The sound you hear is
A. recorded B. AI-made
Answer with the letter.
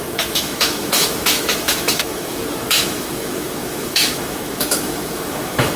B